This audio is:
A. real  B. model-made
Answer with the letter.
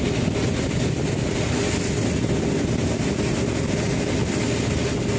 A